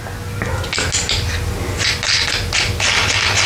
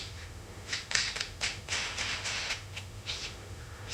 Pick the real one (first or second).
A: first